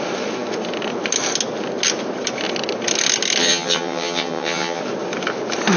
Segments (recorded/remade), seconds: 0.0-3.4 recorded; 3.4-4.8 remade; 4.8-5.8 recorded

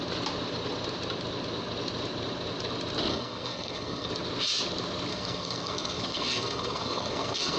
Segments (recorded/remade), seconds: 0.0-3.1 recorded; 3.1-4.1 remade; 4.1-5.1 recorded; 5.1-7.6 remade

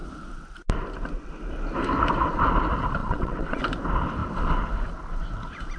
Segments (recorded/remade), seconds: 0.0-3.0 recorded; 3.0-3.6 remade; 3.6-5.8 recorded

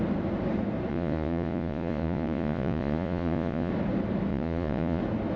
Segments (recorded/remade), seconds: 0.0-0.9 recorded; 0.9-3.7 remade; 3.7-4.3 recorded; 4.3-5.0 remade; 5.0-5.4 recorded

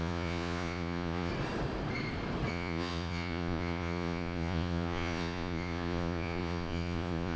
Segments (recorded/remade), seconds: 0.0-1.3 remade; 1.3-2.5 recorded; 2.5-7.4 remade

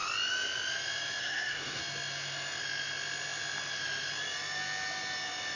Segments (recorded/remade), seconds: 0.0-1.2 recorded; 1.2-1.8 remade; 1.8-5.6 recorded